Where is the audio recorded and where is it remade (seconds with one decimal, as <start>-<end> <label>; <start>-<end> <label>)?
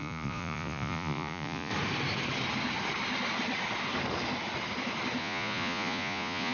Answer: 0.0-1.7 remade; 1.7-5.2 recorded; 5.2-6.5 remade